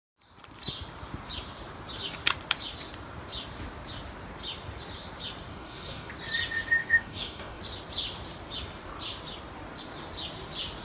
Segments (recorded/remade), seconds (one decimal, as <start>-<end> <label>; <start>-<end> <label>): 0.0-5.5 recorded; 5.5-6.1 remade; 6.1-6.8 recorded; 6.8-7.6 remade; 7.6-10.8 recorded